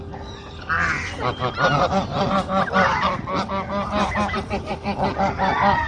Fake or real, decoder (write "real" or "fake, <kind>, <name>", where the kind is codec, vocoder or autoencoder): real